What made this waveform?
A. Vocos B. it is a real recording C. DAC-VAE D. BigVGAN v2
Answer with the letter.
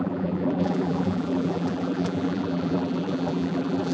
D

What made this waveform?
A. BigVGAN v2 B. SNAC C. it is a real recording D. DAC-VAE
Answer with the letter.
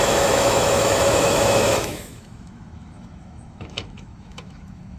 D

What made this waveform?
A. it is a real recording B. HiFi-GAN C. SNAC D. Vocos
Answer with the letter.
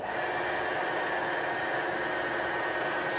A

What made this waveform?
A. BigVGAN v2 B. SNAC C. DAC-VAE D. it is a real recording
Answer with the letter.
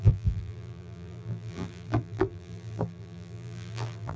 A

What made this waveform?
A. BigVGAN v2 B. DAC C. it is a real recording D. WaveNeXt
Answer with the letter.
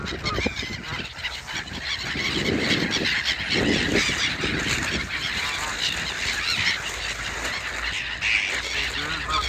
C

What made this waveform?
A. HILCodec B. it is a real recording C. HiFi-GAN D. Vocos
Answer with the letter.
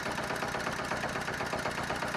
B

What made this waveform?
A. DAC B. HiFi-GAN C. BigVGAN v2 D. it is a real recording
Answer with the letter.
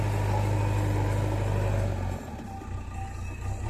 D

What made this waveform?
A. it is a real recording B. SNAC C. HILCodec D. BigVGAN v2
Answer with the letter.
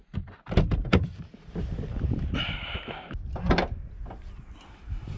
A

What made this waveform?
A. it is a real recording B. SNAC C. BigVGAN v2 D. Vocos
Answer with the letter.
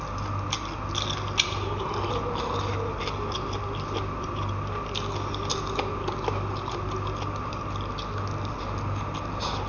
A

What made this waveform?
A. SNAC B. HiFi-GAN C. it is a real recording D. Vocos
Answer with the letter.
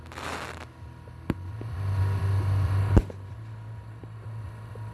C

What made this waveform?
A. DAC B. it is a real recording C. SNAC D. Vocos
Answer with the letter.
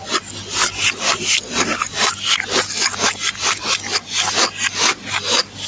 B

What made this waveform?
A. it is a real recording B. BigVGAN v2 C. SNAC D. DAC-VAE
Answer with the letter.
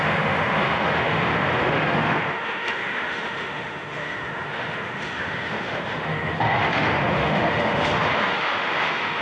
D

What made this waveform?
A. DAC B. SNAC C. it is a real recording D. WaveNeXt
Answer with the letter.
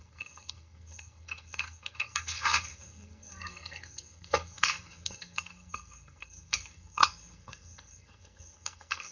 B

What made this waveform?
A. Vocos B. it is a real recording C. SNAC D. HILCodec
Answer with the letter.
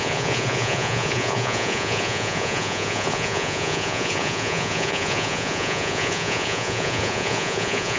A